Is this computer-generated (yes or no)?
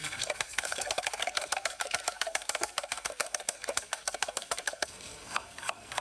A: yes